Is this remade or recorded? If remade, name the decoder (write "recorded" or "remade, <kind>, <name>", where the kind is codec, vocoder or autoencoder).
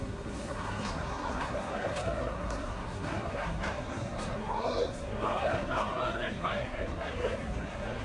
remade, codec, SNAC